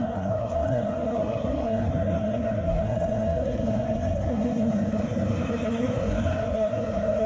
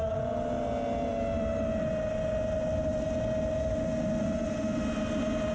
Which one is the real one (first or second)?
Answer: second